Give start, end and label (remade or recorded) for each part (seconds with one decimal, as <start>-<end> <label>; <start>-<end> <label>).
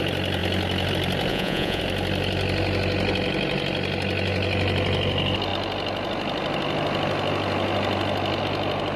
0.0-1.3 recorded; 1.3-1.8 remade; 1.8-9.0 recorded